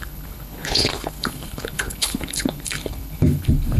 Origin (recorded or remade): remade